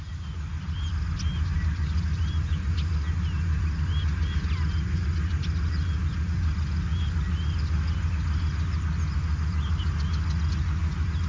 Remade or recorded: recorded